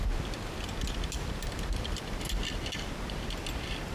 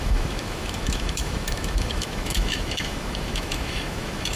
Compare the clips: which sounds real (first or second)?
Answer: first